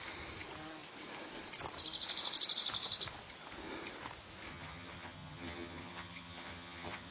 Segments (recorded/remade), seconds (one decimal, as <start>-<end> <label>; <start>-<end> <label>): 0.0-4.5 recorded; 4.5-7.1 remade

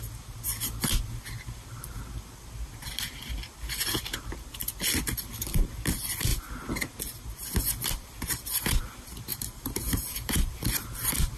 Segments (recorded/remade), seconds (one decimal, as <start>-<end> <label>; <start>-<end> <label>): 0.0-9.3 recorded; 9.3-10.6 remade; 10.6-11.4 recorded

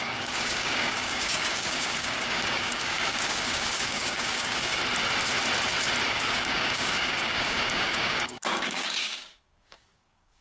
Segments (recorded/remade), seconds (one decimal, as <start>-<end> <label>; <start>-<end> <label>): 0.0-4.8 remade; 4.8-6.1 recorded; 6.1-10.4 remade